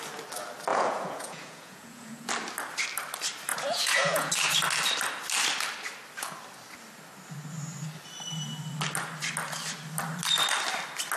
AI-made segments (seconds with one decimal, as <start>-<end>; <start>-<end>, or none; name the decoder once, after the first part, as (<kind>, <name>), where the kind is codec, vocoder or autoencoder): 0.7-2.3 (vocoder, Vocos); 3.5-4.3